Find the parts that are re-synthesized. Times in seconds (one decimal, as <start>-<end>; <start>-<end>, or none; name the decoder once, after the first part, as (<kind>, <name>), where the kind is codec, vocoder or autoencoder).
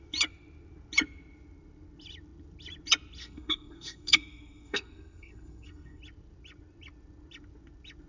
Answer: 3.2-6.0 (codec, SNAC)